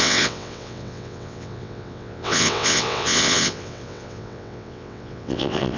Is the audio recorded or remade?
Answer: remade